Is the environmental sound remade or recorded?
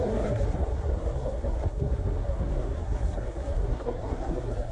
remade